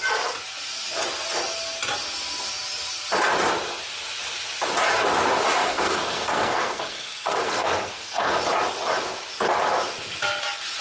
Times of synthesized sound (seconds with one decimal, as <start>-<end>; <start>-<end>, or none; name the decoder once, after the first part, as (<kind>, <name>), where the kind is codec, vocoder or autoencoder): 5.6-8.4 (codec, SNAC)